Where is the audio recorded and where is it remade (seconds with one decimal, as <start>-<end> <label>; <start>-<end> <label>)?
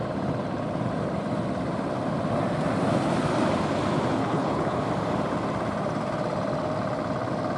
0.0-4.2 recorded; 4.2-4.8 remade; 4.8-7.6 recorded